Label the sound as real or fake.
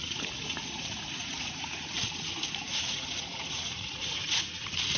fake